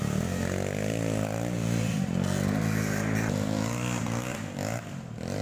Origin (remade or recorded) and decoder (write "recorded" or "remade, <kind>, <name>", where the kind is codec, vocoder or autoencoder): recorded